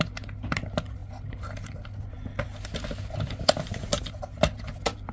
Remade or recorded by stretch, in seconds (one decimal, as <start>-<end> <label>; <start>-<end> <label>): 0.0-5.1 recorded